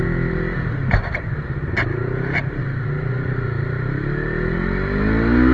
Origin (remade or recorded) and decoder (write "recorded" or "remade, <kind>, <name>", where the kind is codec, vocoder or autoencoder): recorded